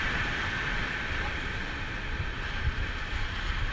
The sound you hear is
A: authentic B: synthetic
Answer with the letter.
A